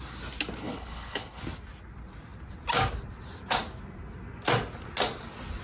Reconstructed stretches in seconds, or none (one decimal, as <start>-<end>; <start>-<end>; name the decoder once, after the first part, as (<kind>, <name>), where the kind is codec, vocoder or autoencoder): 0.6-1.4 (codec, HILCodec)